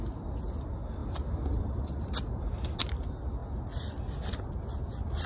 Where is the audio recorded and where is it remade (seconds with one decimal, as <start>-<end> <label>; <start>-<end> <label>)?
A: 0.0-5.3 recorded